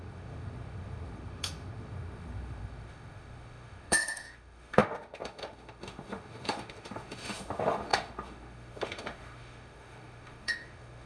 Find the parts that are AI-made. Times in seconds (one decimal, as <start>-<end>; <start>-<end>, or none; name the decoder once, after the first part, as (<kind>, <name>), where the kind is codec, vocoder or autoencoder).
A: 0.0-11.1 (autoencoder, DAC-VAE)